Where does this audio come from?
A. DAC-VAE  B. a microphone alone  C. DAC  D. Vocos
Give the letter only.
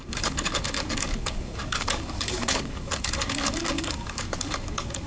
C